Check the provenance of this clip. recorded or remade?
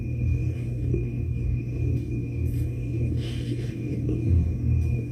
remade